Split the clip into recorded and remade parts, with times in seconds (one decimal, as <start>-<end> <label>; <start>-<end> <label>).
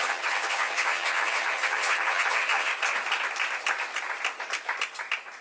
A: 0.0-2.7 remade; 2.7-5.4 recorded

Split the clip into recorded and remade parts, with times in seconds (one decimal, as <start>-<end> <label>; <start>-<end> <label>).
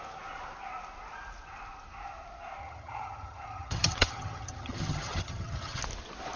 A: 0.0-2.6 recorded; 2.6-5.8 remade; 5.8-6.4 recorded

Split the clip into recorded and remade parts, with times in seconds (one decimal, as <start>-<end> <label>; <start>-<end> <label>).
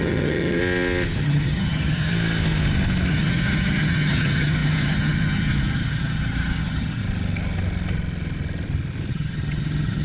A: 0.0-0.6 remade; 0.6-1.2 recorded; 1.2-2.1 remade; 2.1-3.1 recorded; 3.1-7.0 remade; 7.0-9.1 recorded; 9.1-10.0 remade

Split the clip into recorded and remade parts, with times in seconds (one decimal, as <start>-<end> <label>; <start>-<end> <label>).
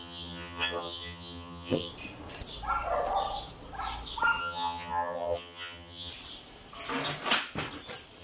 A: 0.0-1.9 remade; 1.9-4.4 recorded; 4.4-6.1 remade; 6.1-8.2 recorded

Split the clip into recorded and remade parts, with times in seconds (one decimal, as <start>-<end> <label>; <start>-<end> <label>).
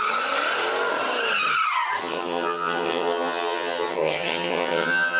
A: 0.0-2.0 recorded; 2.0-5.2 remade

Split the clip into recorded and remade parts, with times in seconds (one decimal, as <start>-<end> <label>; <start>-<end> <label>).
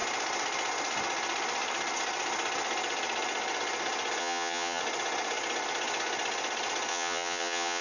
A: 0.0-4.2 recorded; 4.2-4.8 remade; 4.8-6.9 recorded; 6.9-7.8 remade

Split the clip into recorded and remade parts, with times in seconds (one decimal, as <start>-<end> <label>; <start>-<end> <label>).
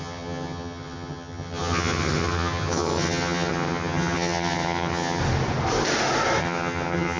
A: 0.0-5.2 remade; 5.2-6.4 recorded; 6.4-7.2 remade